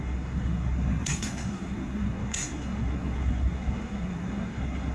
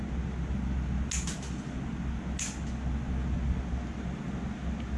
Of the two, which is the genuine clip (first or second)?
second